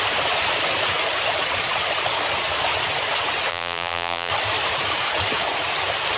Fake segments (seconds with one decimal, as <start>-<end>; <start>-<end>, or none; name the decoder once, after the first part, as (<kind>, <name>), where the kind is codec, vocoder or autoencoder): 3.5-4.3 (vocoder, BigVGAN v2)